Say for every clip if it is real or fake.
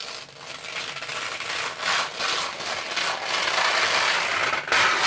real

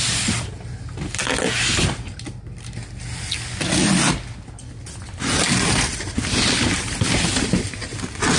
real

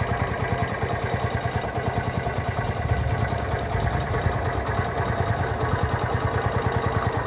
real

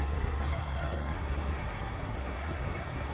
fake